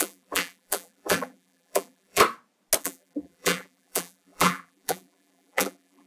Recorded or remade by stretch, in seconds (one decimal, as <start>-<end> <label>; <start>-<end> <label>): 0.0-2.2 remade; 2.2-2.8 recorded; 2.8-6.1 remade